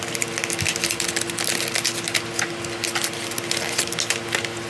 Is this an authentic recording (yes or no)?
yes